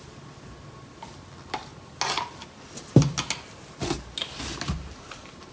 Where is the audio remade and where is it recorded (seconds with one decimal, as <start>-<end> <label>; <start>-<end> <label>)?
0.0-5.5 recorded